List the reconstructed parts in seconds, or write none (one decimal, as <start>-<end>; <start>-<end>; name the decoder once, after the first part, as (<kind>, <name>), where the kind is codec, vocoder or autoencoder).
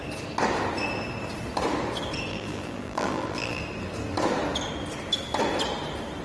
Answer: 2.3-3.6 (vocoder, BigVGAN v2)